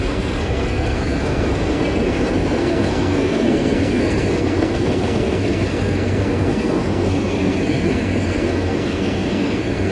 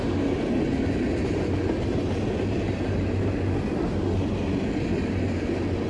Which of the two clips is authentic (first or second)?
second